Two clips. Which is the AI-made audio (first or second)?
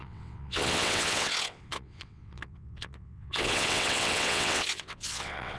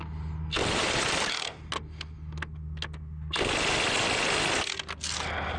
first